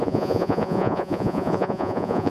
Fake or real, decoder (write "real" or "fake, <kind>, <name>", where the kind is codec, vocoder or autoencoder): fake, vocoder, Vocos